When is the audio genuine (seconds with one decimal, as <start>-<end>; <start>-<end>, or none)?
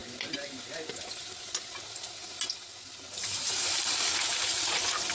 0.0-3.1